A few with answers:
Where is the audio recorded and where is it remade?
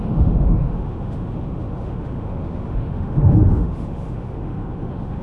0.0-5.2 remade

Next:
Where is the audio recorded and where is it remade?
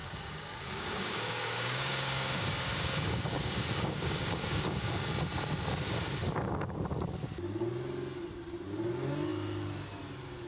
0.0-5.1 remade; 5.1-10.5 recorded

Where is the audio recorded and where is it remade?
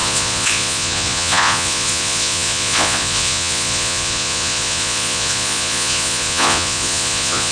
0.0-7.5 remade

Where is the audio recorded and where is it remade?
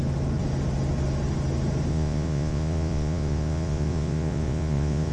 0.0-1.9 recorded; 1.9-5.1 remade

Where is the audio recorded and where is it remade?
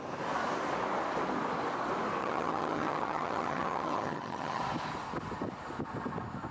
0.0-2.2 recorded; 2.2-4.6 remade; 4.6-6.5 recorded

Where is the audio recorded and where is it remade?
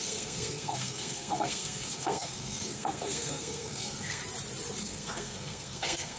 0.0-4.2 remade; 4.2-4.8 recorded; 4.8-6.2 remade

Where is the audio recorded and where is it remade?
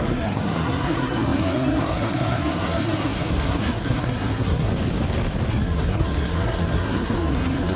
0.0-4.7 remade; 4.7-5.5 recorded; 5.5-7.8 remade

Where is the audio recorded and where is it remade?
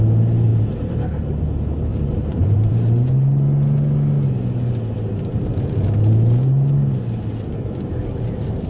0.0-1.9 recorded; 1.9-2.7 remade; 2.7-8.7 recorded